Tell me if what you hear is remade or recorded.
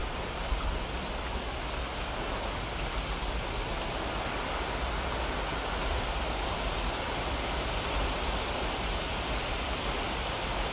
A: recorded